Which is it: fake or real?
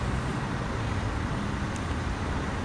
real